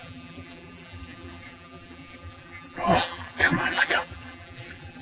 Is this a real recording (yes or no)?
no